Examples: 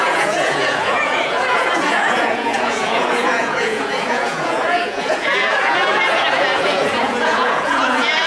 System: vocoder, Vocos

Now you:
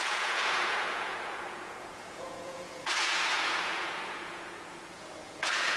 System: vocoder, Vocos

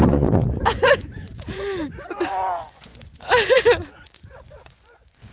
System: vocoder, Vocos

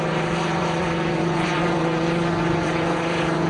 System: vocoder, Vocos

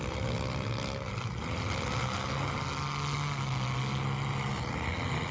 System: none